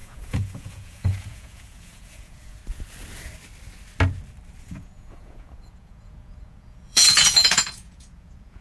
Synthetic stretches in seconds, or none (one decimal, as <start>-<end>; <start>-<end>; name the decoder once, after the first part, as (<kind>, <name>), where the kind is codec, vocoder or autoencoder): 0.0-2.6 (vocoder, Vocos); 4.6-8.6